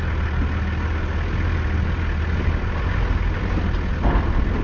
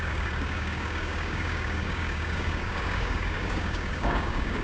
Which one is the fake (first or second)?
second